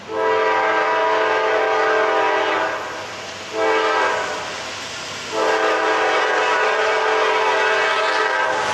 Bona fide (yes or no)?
yes